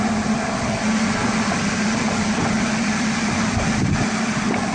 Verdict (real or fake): real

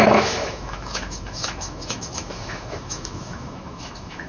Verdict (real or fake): fake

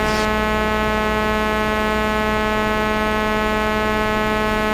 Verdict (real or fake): real